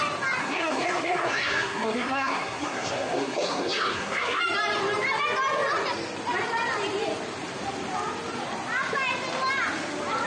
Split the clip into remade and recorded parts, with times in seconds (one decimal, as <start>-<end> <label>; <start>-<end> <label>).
0.0-0.4 recorded; 0.4-4.4 remade; 4.4-10.3 recorded